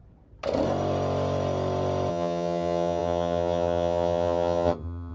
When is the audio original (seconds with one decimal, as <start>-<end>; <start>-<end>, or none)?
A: 0.0-2.1